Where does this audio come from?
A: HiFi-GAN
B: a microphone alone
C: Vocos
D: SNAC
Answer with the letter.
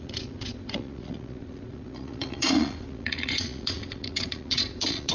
C